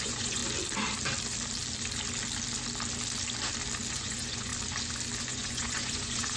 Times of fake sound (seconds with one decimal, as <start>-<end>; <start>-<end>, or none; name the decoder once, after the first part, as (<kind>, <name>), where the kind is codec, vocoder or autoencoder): 0.0-0.4 (vocoder, Vocos); 3.9-4.5; 5.2-6.4